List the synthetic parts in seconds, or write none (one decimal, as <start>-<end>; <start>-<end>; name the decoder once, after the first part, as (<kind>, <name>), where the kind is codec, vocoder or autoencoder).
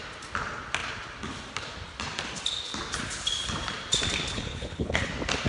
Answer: 4.3-5.1 (codec, HILCodec)